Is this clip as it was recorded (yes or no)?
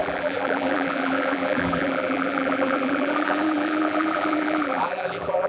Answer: no